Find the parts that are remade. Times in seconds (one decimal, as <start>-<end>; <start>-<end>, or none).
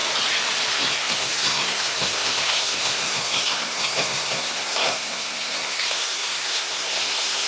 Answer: 0.7-7.5